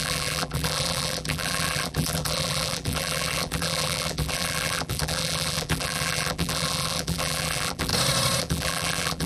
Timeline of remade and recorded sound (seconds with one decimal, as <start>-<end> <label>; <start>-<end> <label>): 0.0-7.9 remade; 7.9-8.4 recorded; 8.4-9.3 remade